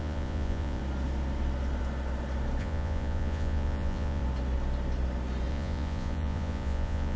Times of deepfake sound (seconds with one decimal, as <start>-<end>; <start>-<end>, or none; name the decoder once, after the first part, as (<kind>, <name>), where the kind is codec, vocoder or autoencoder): 0.0-0.8 (vocoder, Vocos); 2.6-4.2; 5.5-7.2